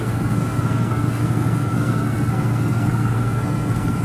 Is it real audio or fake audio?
fake